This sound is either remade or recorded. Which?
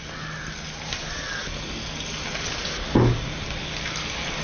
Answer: recorded